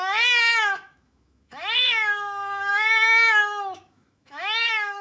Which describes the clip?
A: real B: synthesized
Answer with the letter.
B